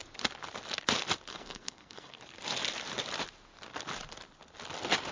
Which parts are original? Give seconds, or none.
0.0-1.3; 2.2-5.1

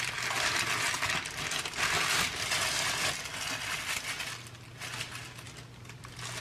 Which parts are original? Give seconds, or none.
0.0-6.4

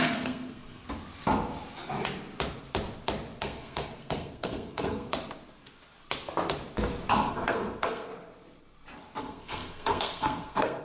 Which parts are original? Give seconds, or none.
0.8-3.4; 5.1-7.3; 8.1-9.2

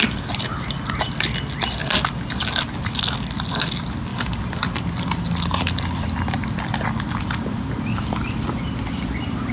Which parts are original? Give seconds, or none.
0.0-4.1

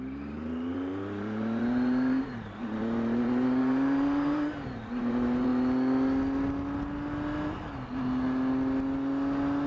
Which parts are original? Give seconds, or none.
5.5-9.7

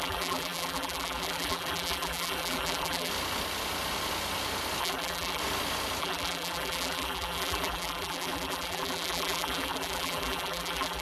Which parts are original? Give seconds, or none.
3.1-4.8; 5.4-6.0

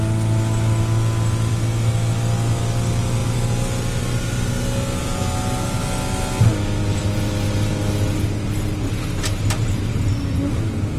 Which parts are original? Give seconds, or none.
0.0-11.0